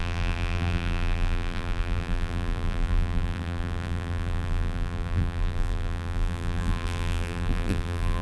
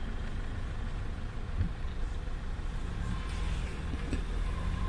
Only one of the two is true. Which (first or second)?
second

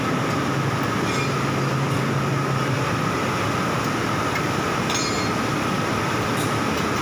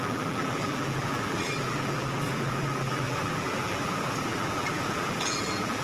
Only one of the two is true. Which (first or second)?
first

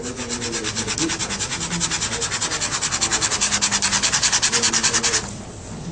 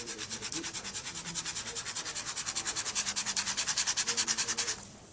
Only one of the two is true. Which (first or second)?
first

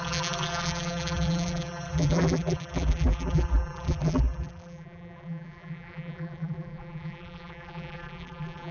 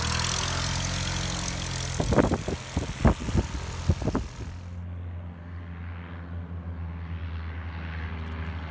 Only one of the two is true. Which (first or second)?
second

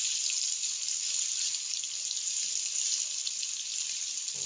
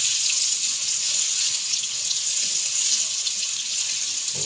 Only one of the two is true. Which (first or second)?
first